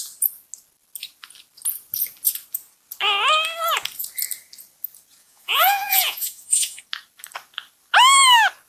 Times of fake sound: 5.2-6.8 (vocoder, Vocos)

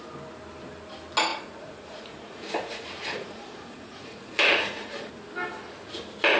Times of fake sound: 1.3-5.1 (vocoder, Vocos)